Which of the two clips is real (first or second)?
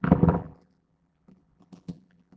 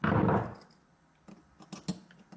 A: second